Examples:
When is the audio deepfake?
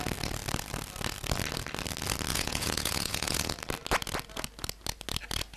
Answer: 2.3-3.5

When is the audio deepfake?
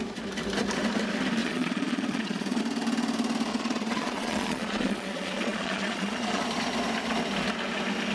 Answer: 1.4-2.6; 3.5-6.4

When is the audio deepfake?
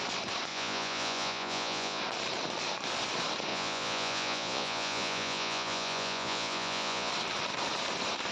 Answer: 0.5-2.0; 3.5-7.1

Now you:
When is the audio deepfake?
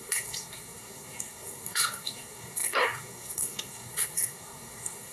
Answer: 0.0-5.1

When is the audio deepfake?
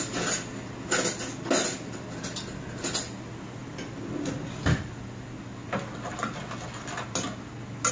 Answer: none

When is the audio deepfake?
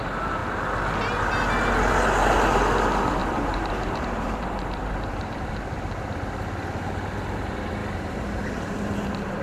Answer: 3.2-5.5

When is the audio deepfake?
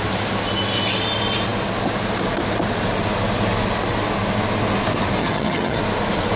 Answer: 5.2-5.8